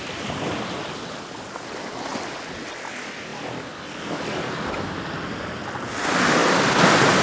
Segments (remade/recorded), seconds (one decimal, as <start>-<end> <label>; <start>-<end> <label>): 0.0-7.2 recorded